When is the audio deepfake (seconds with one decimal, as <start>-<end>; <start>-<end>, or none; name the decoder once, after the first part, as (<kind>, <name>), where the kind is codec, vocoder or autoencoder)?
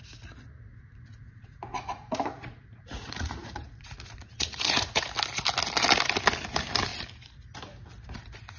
0.7-5.0 (vocoder, Vocos)